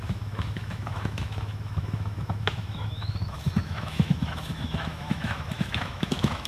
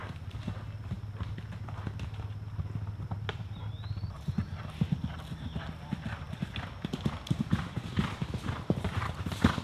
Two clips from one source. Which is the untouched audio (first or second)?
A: second